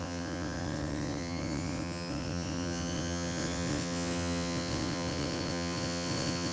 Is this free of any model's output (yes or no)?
no